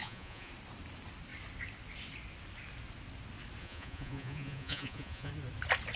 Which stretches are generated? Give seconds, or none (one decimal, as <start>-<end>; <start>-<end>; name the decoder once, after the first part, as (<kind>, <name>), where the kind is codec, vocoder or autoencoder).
0.0-0.5 (vocoder, Vocos); 3.6-5.3